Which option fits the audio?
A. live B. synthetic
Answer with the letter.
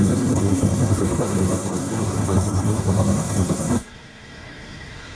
B